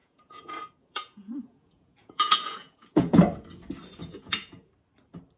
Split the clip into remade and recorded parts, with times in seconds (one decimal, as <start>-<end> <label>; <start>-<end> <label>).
0.0-3.2 remade; 3.2-4.0 recorded; 4.0-4.7 remade; 4.7-5.4 recorded